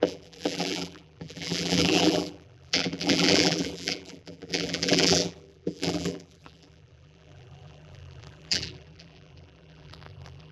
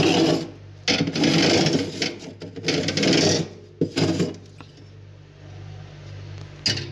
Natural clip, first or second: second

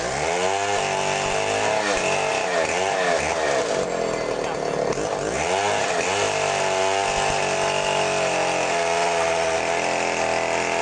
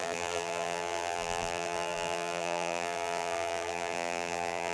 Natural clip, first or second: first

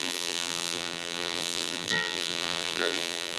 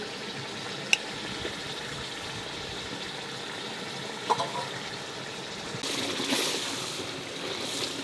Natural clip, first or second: second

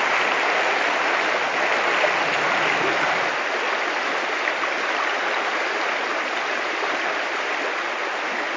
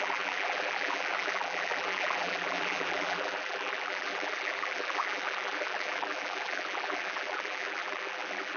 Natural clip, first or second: first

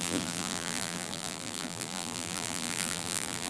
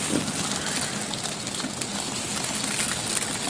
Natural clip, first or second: second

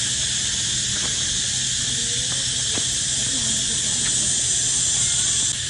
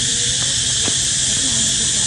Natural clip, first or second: first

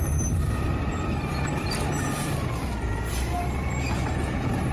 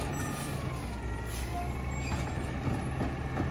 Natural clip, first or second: second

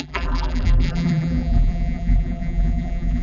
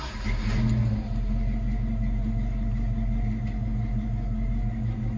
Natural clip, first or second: second